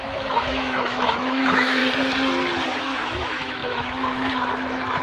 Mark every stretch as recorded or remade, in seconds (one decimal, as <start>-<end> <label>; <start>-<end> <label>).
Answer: 0.0-1.8 remade; 1.8-2.8 recorded; 2.8-5.0 remade